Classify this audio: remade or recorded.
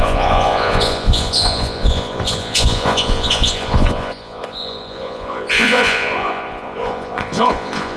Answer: remade